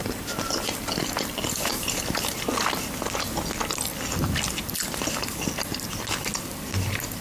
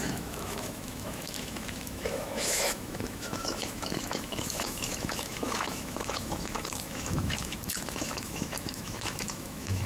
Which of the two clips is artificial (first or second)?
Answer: second